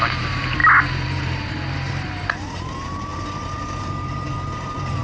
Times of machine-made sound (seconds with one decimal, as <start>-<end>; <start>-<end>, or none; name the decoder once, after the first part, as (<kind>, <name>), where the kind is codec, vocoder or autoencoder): 0.0-0.6 (vocoder, BigVGAN v2); 2.0-5.0